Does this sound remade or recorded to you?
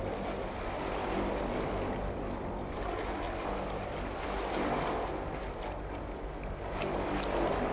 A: recorded